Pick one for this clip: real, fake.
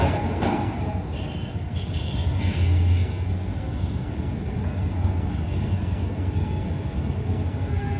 fake